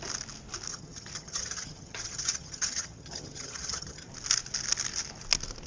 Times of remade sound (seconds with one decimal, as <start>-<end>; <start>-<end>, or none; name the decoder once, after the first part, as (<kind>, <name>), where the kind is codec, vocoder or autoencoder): 0.7-4.1 (vocoder, HiFi-GAN)